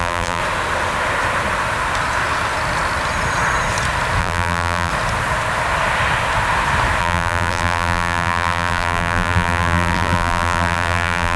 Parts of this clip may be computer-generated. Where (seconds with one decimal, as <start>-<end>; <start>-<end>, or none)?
0.0-0.4; 4.2-4.9; 7.0-11.4